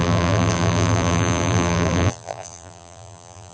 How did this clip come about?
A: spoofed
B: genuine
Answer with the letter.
A